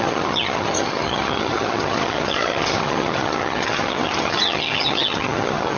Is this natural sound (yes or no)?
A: no